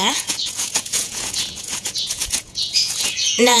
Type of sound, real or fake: fake